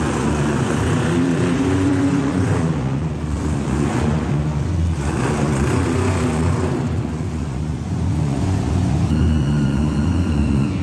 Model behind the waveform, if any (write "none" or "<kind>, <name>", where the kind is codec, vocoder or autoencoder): vocoder, Vocos